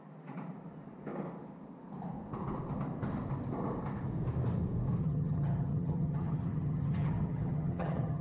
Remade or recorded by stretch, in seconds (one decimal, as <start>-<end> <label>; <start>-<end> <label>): 0.0-5.0 recorded; 5.0-8.2 remade